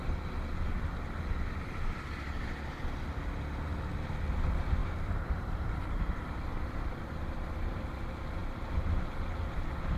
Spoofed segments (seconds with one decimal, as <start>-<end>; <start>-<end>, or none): 4.8-7.8; 8.4-8.9